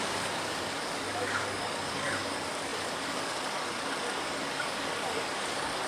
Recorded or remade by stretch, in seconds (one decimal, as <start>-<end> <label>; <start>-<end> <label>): 0.0-5.9 remade